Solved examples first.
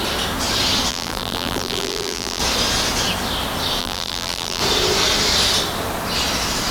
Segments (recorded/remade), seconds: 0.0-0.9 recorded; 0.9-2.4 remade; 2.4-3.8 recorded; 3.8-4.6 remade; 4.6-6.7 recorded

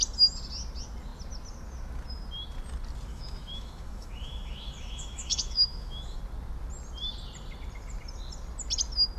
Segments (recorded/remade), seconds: 0.0-3.1 recorded; 3.1-6.2 remade; 6.2-9.2 recorded

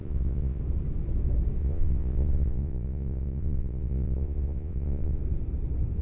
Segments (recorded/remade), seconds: 0.0-0.6 remade; 0.6-1.6 recorded; 1.6-5.2 remade; 5.2-6.0 recorded

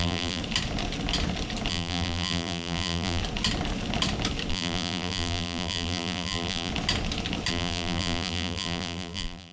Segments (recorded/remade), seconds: 0.0-0.4 remade; 0.4-1.7 recorded; 1.7-3.2 remade; 3.2-4.5 recorded; 4.5-6.7 remade; 6.7-7.5 recorded; 7.5-9.5 remade

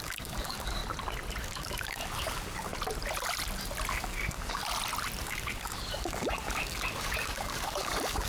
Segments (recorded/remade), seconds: 0.0-0.8 remade; 0.8-1.4 recorded; 1.4-2.7 remade; 2.7-3.9 recorded; 3.9-4.6 remade; 4.6-5.2 recorded; 5.2-8.3 remade

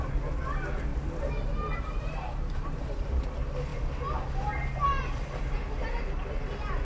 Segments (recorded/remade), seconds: 0.0-0.9 recorded; 0.9-3.1 remade; 3.1-6.8 recorded

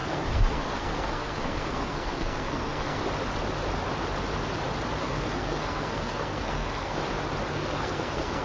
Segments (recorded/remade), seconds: 0.0-3.0 remade; 3.0-5.0 recorded; 5.0-7.0 remade; 7.0-7.5 recorded; 7.5-8.4 remade